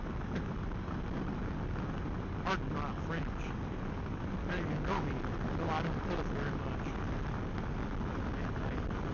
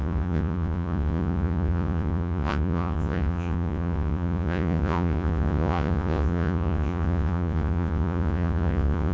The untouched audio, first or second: first